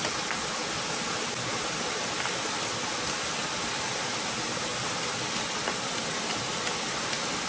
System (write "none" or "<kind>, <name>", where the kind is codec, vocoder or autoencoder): none